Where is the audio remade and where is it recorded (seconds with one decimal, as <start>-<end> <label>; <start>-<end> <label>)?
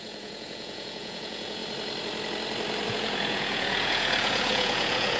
0.0-1.6 remade; 1.6-2.9 recorded; 2.9-5.2 remade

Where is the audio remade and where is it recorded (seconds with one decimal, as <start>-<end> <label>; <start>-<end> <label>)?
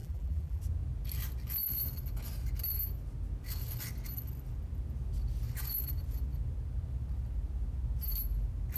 0.0-0.6 remade; 0.6-8.8 recorded